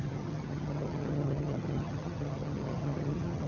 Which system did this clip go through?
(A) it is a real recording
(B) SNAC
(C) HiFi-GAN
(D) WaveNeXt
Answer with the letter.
C